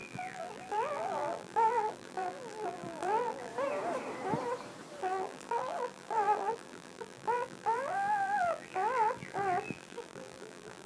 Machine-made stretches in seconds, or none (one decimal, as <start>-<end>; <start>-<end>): 0.0-3.5; 5.0-10.9

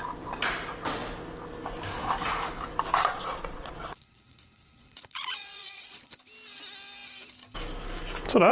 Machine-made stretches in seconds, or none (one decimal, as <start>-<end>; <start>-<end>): 3.0-6.1

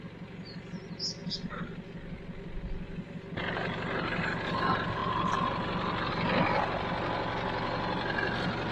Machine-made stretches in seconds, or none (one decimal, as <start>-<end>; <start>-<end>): none

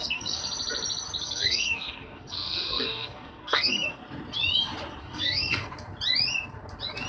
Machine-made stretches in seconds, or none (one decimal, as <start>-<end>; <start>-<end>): 0.0-0.4; 1.2-4.0; 5.0-5.7

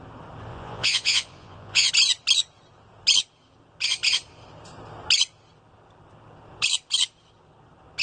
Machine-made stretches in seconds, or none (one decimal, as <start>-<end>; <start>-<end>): 0.5-1.9